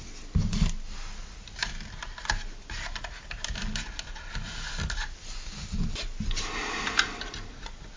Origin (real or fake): real